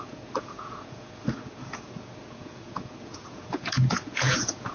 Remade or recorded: remade